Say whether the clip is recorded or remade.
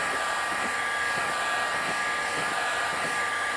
recorded